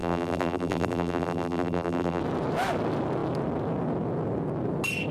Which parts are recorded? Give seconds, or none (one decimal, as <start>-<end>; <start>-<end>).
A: 2.2-5.1